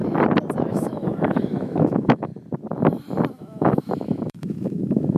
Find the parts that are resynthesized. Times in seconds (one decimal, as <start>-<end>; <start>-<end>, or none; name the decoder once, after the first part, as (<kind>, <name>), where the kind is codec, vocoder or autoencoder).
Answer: 0.7-2.3 (autoencoder, DAC-VAE); 3.3-5.2